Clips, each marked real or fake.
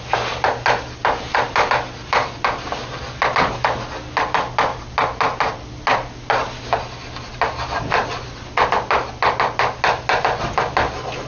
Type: real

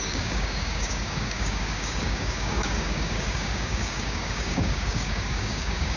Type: fake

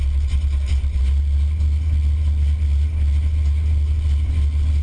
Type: real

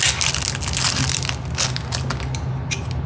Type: real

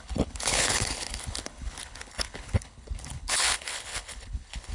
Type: fake